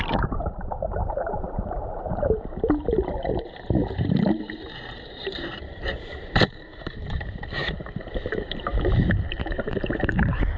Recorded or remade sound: remade